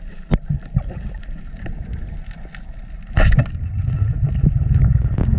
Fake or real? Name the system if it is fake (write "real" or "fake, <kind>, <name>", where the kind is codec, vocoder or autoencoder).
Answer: real